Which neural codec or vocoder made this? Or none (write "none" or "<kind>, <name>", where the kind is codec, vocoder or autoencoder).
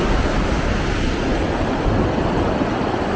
none